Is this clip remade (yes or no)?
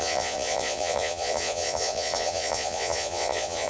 yes